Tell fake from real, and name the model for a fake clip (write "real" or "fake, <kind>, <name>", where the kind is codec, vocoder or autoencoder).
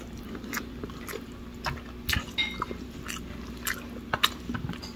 real